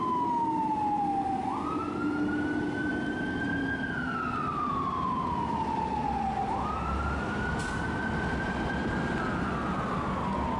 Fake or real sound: real